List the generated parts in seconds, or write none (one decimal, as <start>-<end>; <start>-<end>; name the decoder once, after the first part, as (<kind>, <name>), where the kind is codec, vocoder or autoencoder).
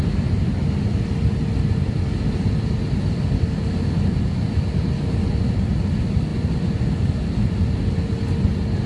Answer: none